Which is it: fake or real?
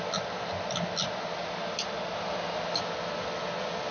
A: real